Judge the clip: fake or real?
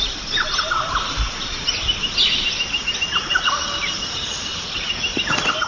real